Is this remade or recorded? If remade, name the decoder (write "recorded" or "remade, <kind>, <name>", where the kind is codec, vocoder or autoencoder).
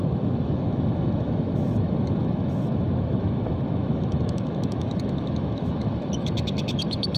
remade, autoencoder, DAC-VAE